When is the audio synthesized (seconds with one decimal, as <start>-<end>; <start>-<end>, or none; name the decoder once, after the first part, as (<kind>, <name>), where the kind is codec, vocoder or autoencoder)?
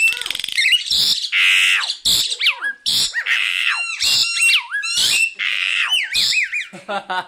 0.0-1.1 (vocoder, BigVGAN v2); 2.6-4.2; 5.4-7.3